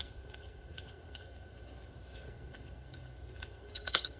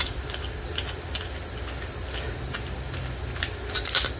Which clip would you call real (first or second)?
second